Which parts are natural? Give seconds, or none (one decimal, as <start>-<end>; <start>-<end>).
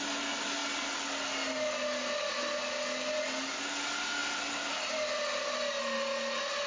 0.0-6.7